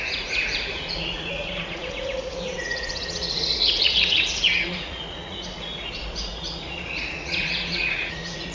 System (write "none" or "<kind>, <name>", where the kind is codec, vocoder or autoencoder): vocoder, Vocos